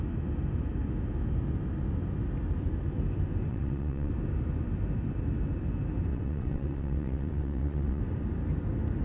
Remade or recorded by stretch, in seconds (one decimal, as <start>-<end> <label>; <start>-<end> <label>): 0.0-3.5 recorded; 3.5-4.1 remade; 4.1-6.1 recorded; 6.1-8.0 remade; 8.0-9.0 recorded